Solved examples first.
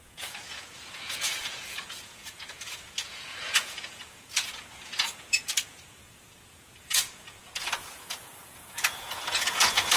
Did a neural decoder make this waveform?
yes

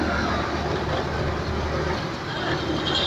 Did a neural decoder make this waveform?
no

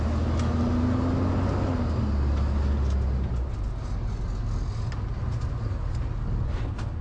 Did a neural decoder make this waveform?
no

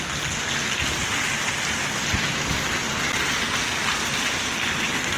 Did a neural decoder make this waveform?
no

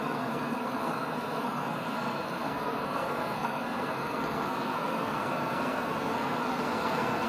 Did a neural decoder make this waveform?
yes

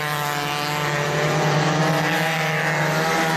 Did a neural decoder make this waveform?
no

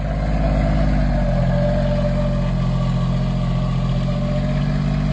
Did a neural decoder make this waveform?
no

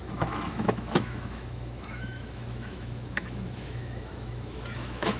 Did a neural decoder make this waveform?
yes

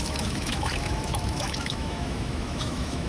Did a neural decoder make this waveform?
yes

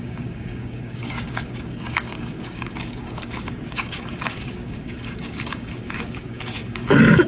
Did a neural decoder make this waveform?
yes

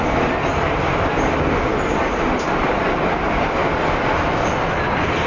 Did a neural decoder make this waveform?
no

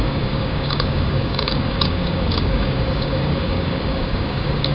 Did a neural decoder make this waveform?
yes